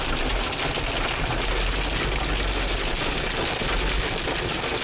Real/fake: real